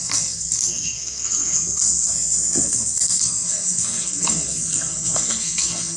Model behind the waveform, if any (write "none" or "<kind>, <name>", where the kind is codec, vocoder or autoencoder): codec, SNAC